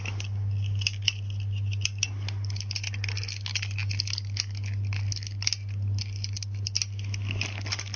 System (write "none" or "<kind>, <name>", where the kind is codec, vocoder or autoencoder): none